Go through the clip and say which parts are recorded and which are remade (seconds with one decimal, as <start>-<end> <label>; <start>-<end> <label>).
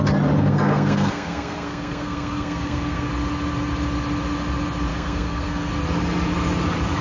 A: 0.0-0.4 recorded; 0.4-3.1 remade; 3.1-4.9 recorded; 4.9-5.7 remade; 5.7-7.0 recorded